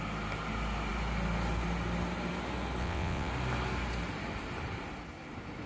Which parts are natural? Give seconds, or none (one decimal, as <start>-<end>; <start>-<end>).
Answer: 0.0-2.8; 3.3-5.7